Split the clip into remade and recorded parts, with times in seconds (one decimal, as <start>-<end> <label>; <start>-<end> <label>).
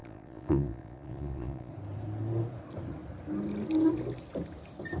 0.0-1.7 remade; 1.7-5.0 recorded